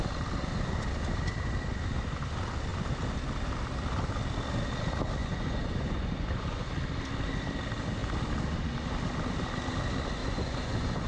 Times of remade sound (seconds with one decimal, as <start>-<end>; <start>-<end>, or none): 5.2-6.7; 10.2-11.1